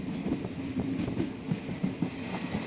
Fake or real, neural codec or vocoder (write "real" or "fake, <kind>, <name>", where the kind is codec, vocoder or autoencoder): real